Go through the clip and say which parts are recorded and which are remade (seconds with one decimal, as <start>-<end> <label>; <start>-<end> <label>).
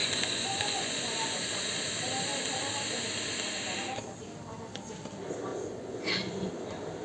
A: 0.0-1.5 remade; 1.5-5.5 recorded; 5.5-6.5 remade; 6.5-7.0 recorded